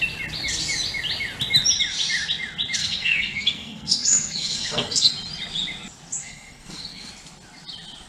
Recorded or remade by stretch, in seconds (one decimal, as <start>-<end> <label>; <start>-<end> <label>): 0.0-2.8 recorded; 2.8-5.1 remade; 5.1-6.2 recorded; 6.2-7.1 remade; 7.1-8.1 recorded